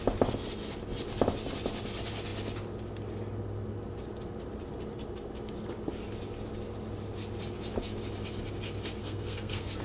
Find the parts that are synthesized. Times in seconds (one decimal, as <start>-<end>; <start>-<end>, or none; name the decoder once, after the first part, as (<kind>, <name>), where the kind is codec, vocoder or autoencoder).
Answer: 9.0-9.8 (codec, SNAC)